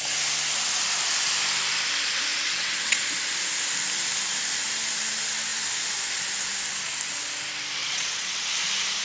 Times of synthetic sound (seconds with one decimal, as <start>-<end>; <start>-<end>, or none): 2.3-3.0; 7.8-8.4